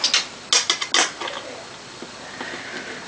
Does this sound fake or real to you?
real